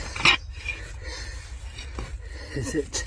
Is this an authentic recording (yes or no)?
yes